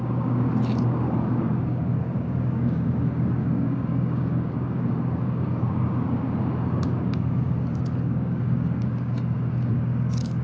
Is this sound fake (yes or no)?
yes